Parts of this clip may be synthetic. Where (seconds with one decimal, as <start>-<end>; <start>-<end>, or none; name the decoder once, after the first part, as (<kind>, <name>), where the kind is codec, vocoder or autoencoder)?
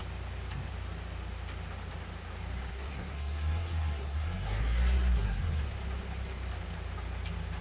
2.7-5.6 (codec, SNAC)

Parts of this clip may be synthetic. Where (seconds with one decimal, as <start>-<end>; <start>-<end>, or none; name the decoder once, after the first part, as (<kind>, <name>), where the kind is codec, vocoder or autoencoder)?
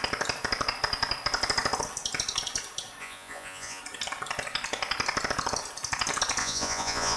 3.0-3.8 (vocoder, Vocos); 6.4-7.2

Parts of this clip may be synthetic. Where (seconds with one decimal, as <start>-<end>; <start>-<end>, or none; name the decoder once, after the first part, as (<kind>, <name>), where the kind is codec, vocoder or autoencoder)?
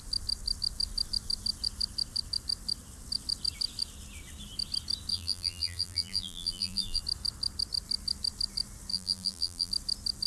5.1-7.0 (vocoder, BigVGAN v2); 8.9-9.7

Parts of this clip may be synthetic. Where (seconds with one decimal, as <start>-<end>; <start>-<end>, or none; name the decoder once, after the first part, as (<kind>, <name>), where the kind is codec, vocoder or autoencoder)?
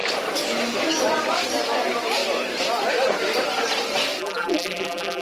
4.2-5.2 (vocoder, BigVGAN v2)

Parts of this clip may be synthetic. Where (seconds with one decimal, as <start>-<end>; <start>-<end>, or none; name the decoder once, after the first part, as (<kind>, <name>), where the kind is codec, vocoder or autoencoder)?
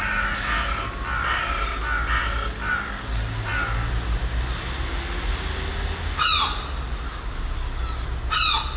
none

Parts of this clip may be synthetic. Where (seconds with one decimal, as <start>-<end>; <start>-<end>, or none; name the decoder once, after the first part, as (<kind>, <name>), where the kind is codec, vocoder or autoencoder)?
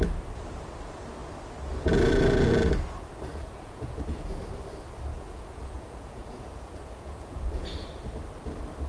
3.3-4.4 (vocoder, Vocos); 5.1-8.0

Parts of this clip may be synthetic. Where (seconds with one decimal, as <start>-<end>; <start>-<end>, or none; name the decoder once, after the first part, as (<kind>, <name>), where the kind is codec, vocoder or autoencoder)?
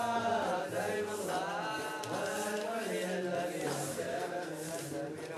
3.9-4.5 (codec, SNAC)